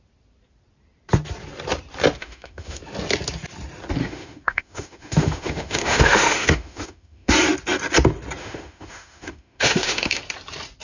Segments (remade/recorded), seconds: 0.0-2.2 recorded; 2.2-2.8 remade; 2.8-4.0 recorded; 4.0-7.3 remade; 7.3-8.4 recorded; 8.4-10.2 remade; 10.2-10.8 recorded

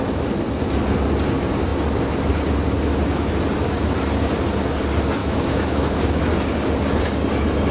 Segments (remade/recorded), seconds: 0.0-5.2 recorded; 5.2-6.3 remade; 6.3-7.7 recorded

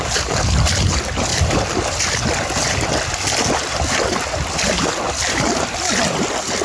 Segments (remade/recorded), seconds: 0.0-6.6 recorded